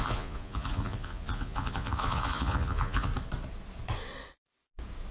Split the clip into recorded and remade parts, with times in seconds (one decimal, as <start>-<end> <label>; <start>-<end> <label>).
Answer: 0.0-3.1 remade; 3.1-5.1 recorded